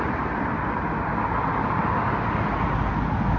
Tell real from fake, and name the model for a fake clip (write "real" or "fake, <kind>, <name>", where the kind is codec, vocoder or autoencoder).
real